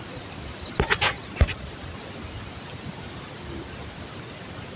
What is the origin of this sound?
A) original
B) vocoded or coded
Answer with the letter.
A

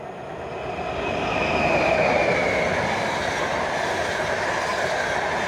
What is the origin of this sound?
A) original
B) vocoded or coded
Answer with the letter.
A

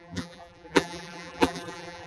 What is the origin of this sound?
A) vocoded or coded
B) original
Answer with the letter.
A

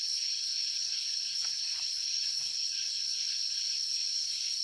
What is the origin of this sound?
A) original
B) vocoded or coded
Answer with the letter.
B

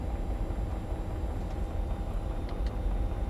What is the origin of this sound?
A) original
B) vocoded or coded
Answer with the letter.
A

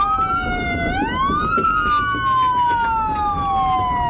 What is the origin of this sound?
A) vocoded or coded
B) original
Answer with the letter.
B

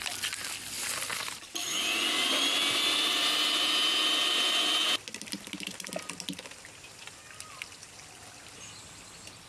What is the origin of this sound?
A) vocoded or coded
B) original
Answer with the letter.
B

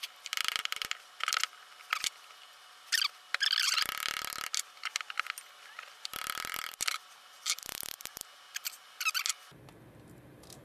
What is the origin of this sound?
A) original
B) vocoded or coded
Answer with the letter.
A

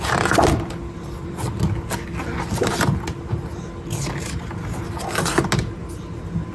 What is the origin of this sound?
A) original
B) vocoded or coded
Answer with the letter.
A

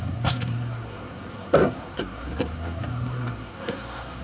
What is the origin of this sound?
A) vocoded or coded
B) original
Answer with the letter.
A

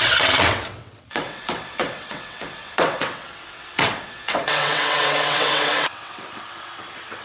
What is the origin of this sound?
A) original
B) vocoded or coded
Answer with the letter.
B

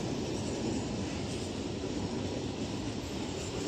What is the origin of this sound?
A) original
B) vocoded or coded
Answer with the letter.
A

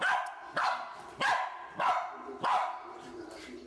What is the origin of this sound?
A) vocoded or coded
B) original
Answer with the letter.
B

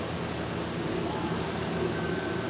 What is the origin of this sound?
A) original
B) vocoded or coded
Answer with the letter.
B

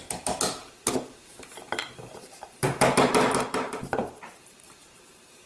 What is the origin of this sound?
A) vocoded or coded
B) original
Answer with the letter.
A